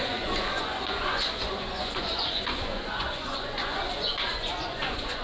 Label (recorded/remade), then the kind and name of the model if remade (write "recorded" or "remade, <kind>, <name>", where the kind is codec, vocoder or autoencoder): remade, vocoder, Vocos